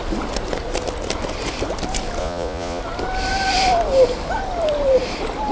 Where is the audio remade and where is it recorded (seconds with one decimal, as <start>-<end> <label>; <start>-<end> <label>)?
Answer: 0.0-2.2 recorded; 2.2-2.8 remade; 2.8-5.5 recorded